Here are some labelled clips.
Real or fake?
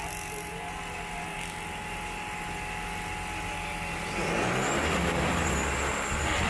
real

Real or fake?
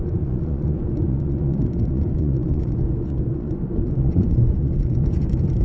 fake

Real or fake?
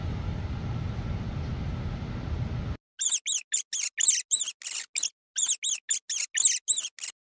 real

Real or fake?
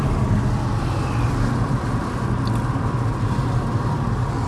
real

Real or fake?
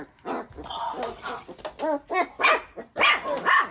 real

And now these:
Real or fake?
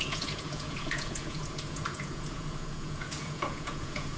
fake